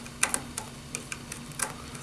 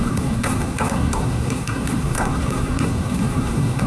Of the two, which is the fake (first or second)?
second